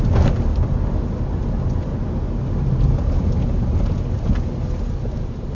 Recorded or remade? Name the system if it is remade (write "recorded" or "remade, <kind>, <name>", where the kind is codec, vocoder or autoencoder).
recorded